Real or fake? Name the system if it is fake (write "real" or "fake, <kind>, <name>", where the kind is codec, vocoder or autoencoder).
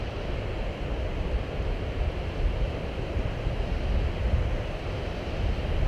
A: real